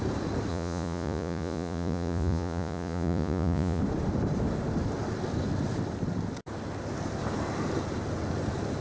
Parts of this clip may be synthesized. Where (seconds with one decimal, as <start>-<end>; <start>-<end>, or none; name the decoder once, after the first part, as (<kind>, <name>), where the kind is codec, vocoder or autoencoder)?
0.5-3.8 (vocoder, Vocos)